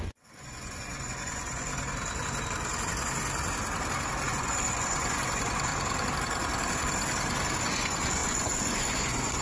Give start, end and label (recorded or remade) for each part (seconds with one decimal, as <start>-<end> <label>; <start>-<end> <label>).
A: 0.0-1.7 remade; 1.7-4.3 recorded; 4.3-5.7 remade; 5.7-7.6 recorded; 7.6-9.4 remade